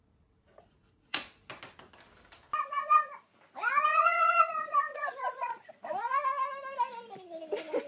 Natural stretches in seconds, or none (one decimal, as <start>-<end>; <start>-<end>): 0.0-0.8; 1.5-3.9; 5.7-7.9